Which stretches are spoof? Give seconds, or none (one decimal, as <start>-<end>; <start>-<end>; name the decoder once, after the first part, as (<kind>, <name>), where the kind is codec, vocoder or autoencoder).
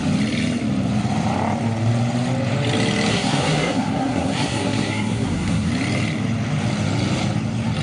3.1-5.7 (codec, SNAC)